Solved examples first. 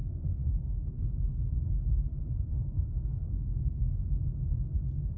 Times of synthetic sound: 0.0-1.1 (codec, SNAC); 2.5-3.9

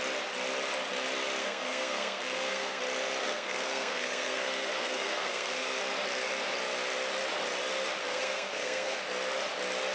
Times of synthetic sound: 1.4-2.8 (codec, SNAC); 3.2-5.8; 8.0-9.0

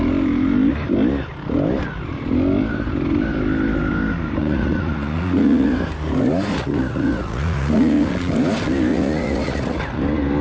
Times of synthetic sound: 4.4-5.7 (vocoder, Vocos); 6.5-8.1; 8.9-10.0